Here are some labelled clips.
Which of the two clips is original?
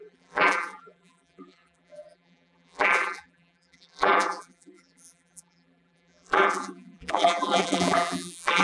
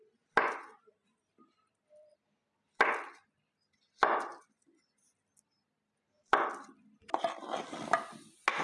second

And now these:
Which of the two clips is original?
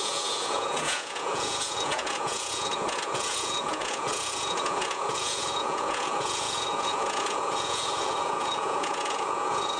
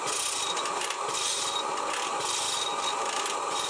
second